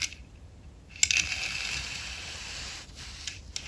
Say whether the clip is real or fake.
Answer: real